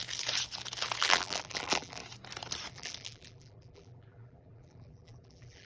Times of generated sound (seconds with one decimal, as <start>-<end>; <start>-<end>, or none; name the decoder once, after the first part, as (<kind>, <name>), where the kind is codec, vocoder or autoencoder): 1.0-2.0 (vocoder, BigVGAN v2); 2.7-5.6